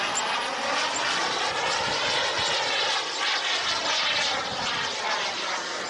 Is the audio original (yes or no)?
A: yes